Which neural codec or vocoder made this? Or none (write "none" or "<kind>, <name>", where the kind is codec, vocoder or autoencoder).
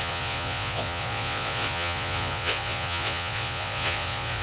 vocoder, Vocos